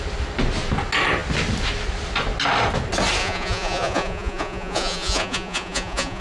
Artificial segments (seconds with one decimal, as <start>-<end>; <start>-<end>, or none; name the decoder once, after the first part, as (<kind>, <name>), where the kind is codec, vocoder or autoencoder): 3.2-6.2 (vocoder, Vocos)